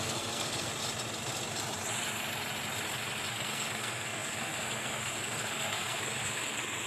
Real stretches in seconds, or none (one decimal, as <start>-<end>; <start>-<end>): 0.7-3.3